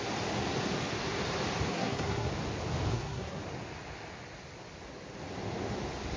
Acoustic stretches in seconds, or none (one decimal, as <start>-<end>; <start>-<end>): 0.0-1.7; 2.3-2.9; 3.4-6.2